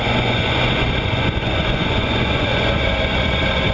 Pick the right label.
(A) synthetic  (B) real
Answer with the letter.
A